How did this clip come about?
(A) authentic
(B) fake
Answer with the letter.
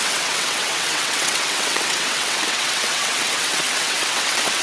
B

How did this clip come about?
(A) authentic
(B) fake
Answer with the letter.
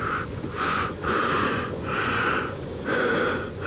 B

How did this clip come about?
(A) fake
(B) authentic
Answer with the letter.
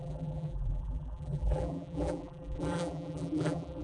A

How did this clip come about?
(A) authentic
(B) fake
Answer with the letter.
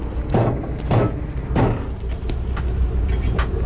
A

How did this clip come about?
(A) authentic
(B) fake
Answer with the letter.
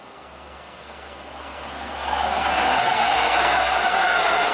B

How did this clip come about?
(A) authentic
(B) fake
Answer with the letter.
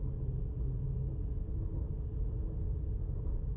A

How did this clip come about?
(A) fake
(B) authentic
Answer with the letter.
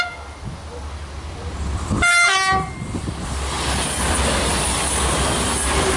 B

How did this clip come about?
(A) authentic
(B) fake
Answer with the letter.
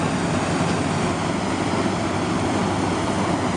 A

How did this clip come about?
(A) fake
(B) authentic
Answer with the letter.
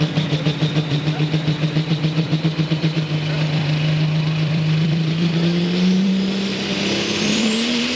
A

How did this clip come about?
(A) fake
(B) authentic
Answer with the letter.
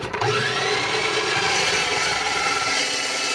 A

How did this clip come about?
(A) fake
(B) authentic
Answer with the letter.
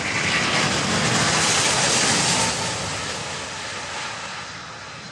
B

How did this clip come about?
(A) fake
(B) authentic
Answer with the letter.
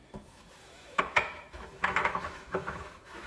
A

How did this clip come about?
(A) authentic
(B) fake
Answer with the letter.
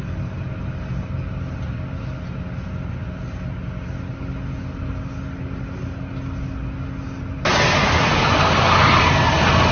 A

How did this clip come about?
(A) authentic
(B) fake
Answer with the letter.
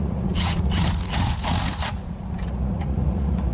B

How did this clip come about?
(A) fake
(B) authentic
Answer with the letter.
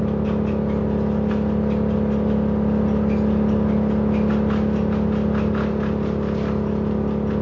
B